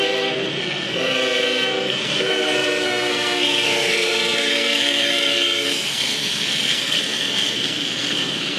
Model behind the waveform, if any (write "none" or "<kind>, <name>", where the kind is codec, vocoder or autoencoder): codec, SNAC